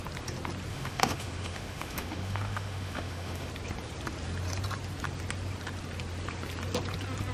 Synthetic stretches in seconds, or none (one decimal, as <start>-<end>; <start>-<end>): 0.7-3.5